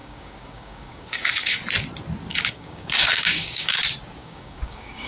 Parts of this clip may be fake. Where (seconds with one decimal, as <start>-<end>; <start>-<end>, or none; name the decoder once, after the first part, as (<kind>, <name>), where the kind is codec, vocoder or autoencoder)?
0.0-1.6 (codec, DAC); 2.3-3.8; 4.2-5.1